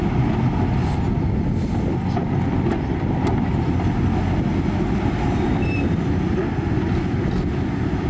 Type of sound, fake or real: real